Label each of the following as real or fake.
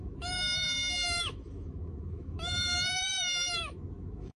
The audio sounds fake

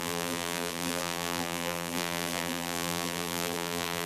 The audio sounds fake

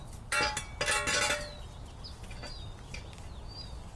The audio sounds real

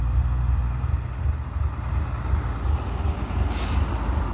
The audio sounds real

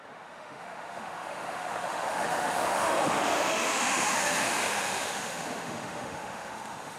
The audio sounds fake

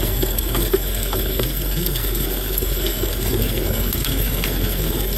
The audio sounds fake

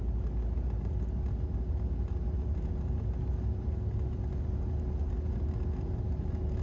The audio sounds real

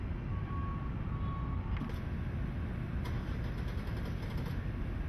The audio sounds real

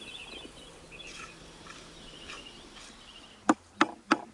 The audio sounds real